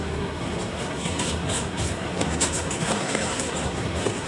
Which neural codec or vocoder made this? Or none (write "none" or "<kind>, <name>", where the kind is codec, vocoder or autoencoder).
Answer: codec, SNAC